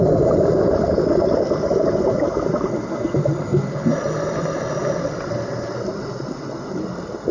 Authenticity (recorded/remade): recorded